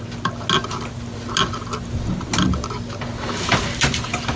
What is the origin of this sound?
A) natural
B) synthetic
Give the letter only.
A